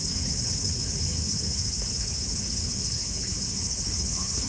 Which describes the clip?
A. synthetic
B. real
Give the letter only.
A